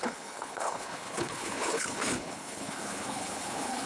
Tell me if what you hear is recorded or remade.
remade